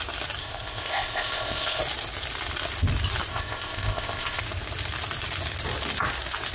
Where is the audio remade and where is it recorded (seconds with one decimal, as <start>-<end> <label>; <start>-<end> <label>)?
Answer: 0.0-0.4 recorded; 0.4-1.8 remade; 1.8-3.3 recorded; 3.3-4.4 remade; 4.4-6.5 recorded